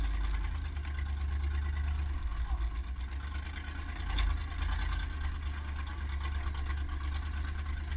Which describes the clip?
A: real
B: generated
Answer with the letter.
A